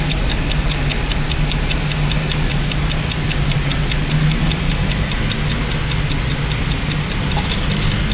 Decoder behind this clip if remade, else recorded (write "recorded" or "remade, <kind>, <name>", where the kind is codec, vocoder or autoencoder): recorded